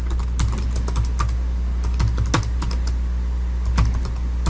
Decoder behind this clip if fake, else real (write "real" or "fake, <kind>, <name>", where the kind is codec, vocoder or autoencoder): real